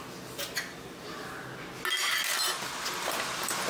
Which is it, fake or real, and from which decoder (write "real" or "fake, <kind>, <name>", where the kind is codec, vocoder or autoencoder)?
real